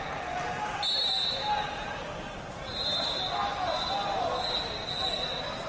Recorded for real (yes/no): yes